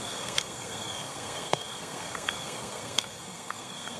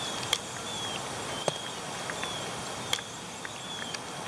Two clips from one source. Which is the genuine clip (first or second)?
second